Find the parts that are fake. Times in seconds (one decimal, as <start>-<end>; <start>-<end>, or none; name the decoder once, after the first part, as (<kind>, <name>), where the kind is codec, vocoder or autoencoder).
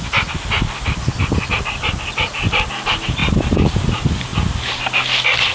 3.2-3.9 (vocoder, BigVGAN v2); 4.3-4.8